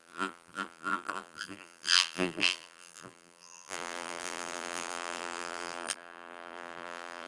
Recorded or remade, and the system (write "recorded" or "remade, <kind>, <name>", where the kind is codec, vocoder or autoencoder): remade, vocoder, BigVGAN v2